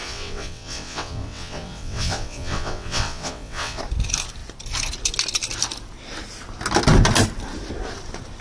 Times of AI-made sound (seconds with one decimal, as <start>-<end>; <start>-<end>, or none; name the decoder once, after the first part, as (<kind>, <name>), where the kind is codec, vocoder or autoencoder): 0.0-3.8 (vocoder, WaveNeXt)

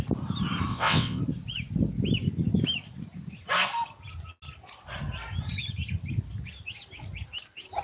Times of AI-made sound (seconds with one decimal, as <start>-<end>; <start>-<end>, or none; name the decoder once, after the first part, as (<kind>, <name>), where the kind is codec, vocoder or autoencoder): 0.7-1.2 (vocoder, WaveNeXt)